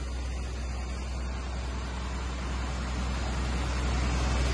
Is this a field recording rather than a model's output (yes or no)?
yes